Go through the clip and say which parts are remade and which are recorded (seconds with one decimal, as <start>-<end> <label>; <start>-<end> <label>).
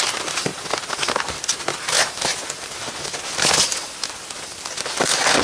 0.0-5.4 recorded